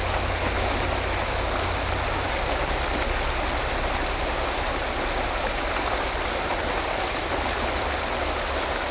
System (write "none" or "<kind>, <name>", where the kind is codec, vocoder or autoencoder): none